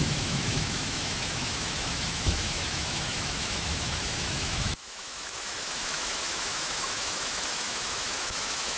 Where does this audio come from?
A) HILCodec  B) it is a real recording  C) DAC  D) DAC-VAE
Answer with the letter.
D